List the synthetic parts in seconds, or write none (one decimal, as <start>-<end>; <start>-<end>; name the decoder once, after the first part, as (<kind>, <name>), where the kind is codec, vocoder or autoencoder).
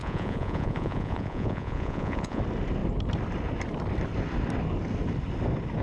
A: 0.0-2.4 (vocoder, Vocos)